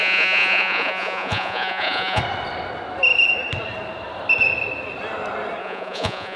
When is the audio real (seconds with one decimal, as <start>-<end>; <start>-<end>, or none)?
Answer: 2.2-5.6